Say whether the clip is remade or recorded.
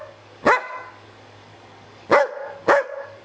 remade